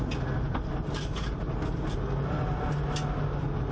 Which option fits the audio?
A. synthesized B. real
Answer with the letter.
B